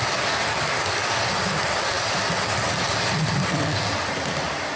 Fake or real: real